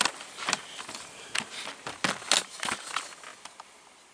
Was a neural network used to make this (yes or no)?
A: no